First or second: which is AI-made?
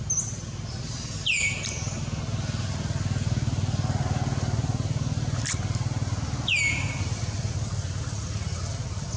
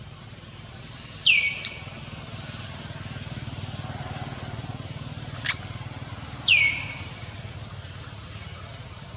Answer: second